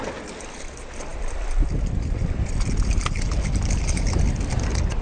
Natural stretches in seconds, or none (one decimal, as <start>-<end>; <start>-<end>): 0.0-5.0